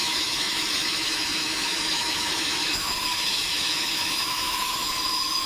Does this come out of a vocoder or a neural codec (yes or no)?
yes